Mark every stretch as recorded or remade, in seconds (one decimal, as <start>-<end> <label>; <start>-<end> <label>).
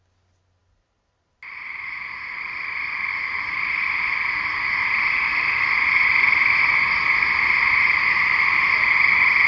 0.0-9.5 recorded